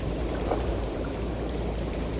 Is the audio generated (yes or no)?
yes